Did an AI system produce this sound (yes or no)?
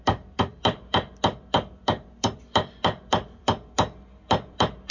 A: yes